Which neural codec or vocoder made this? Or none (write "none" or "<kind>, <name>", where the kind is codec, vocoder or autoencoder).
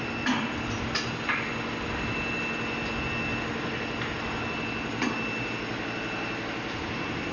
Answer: none